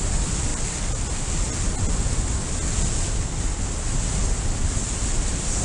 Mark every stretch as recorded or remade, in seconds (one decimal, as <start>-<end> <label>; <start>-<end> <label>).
0.0-5.6 recorded